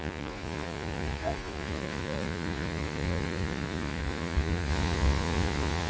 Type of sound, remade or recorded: remade